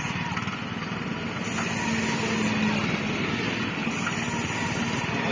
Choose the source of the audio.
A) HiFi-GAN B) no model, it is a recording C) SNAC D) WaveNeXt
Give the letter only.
B